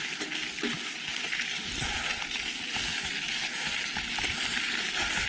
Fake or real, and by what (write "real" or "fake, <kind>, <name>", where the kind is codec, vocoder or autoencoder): real